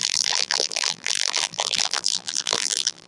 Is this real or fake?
fake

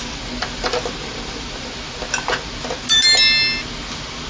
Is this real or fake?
real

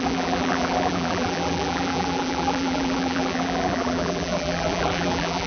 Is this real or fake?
fake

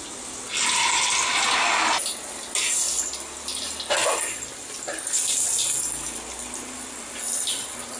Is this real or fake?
real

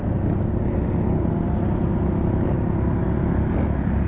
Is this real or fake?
real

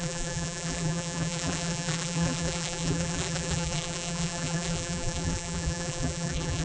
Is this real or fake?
fake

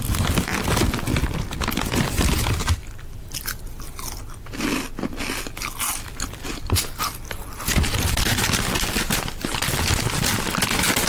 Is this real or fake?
real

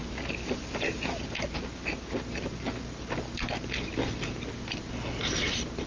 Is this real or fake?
real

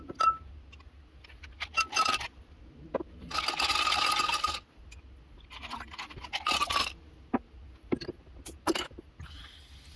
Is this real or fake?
real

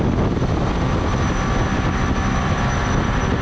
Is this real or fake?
real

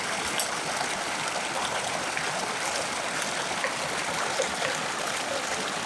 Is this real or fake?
real